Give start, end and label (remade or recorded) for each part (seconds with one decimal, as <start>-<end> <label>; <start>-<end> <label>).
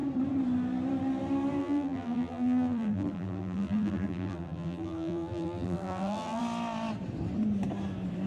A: 0.0-1.6 recorded; 1.6-6.4 remade; 6.4-8.3 recorded